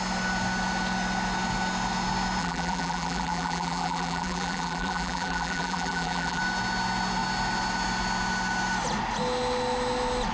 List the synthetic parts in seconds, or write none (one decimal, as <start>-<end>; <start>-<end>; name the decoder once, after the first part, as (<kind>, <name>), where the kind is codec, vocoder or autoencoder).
2.4-6.4 (vocoder, BigVGAN v2)